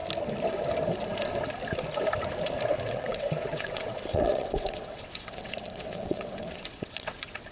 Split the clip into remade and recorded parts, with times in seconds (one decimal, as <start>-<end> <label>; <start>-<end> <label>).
0.0-2.7 recorded; 2.7-7.5 remade